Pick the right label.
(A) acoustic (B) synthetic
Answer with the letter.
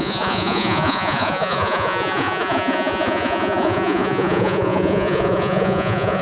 B